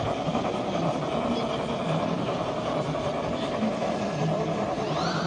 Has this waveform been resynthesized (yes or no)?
no